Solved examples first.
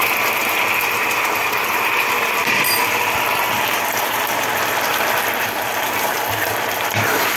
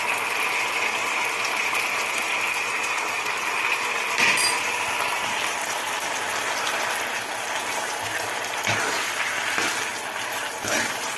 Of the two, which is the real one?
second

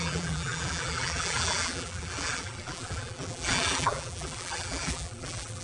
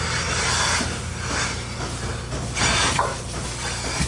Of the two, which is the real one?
second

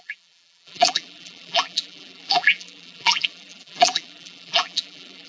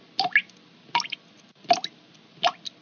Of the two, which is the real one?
second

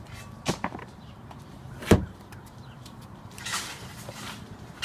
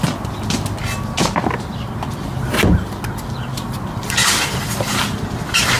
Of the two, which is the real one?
second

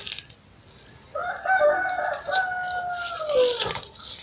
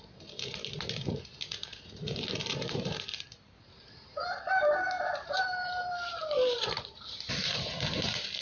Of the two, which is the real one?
first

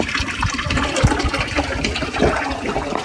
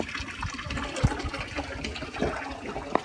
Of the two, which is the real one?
second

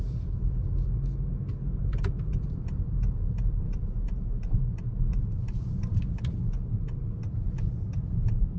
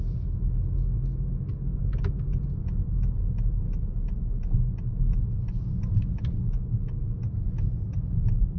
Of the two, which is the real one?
second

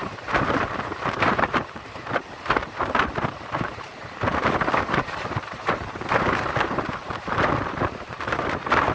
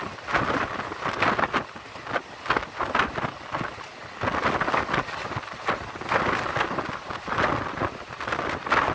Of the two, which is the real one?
second